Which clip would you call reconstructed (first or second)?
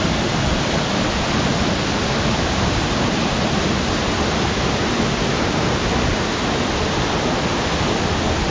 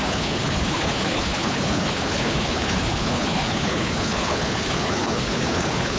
second